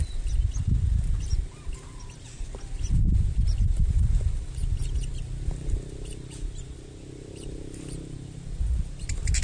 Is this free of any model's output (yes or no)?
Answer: yes